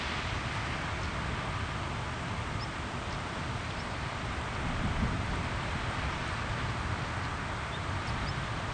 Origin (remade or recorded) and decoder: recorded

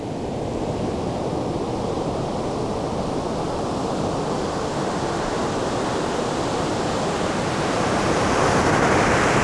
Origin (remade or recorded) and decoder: recorded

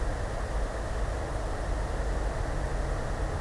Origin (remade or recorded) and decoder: recorded